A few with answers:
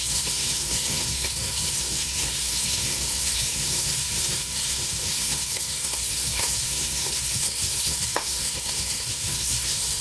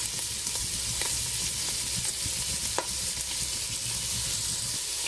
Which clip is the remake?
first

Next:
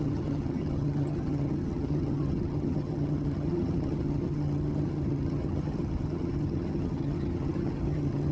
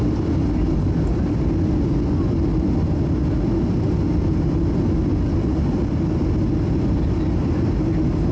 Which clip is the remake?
first